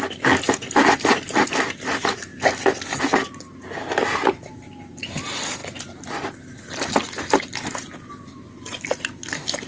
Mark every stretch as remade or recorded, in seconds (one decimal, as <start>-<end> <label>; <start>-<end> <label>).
0.0-8.7 recorded; 8.7-9.7 remade